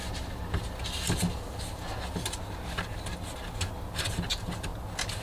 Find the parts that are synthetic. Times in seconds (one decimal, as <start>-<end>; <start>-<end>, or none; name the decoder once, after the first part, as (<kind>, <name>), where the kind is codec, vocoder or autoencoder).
none